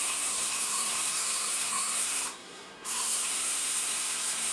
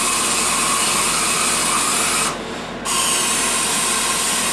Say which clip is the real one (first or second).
second